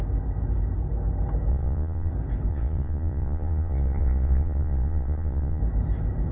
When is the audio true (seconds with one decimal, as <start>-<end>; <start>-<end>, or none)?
0.0-1.5; 2.1-2.5; 5.6-6.3